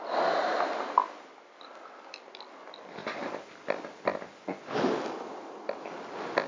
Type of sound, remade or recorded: recorded